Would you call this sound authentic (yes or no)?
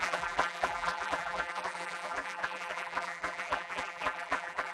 no